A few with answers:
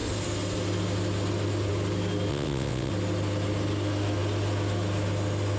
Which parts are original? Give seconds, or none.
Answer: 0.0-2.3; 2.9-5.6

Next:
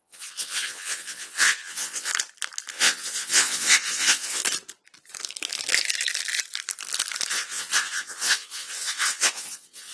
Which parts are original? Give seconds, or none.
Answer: 2.1-2.7; 4.4-7.3

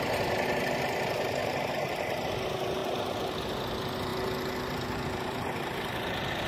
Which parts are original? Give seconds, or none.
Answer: 0.0-6.5

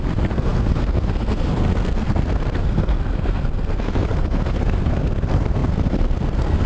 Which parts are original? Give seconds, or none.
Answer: none

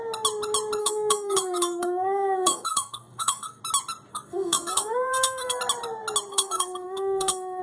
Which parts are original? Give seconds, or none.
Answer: 0.0-0.8; 3.6-4.1; 5.6-6.3

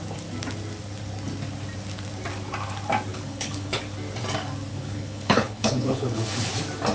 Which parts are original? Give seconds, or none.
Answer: 0.0-3.1; 3.8-4.7; 6.5-6.9

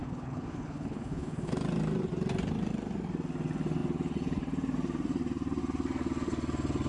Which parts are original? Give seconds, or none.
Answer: 1.5-6.9